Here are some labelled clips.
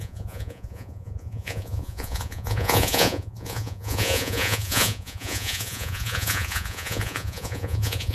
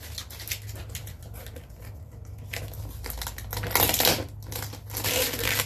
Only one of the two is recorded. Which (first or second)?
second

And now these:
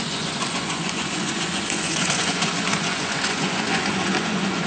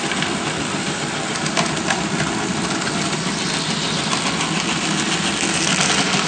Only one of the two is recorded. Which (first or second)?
second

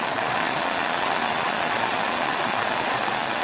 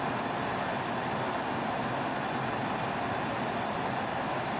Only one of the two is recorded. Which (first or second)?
second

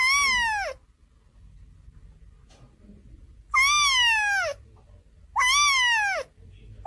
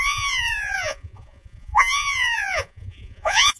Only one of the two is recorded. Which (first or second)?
first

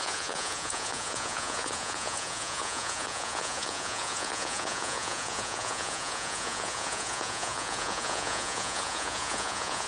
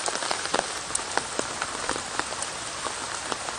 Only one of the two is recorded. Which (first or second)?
second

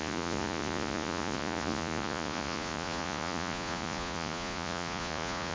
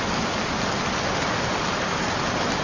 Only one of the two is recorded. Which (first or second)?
second